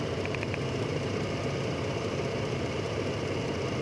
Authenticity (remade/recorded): remade